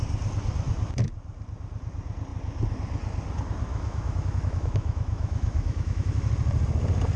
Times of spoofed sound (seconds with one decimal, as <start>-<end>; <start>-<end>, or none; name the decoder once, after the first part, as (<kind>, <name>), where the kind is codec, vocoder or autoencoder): 3.7-6.3 (autoencoder, DAC-VAE)